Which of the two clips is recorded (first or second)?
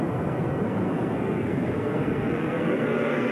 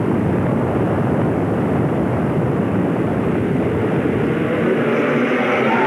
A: second